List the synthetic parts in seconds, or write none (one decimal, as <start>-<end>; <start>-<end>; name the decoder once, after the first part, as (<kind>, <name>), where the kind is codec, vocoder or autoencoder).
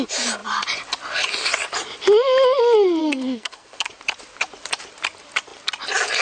3.0-3.9 (codec, SNAC)